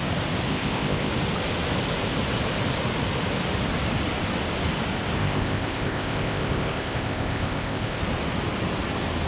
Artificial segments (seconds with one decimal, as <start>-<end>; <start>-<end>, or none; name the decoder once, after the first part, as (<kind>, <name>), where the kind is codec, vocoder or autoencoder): 0.5-1.1 (codec, ZipCodec); 5.2-8.0